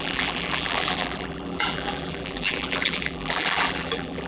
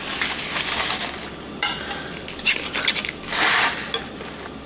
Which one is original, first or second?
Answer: second